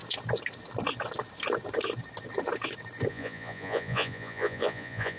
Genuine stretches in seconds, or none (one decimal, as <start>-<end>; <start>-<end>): 0.0-3.1